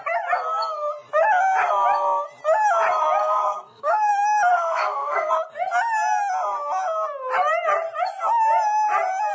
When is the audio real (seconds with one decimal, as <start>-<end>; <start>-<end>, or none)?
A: 0.0-3.2; 4.1-4.5; 5.3-9.3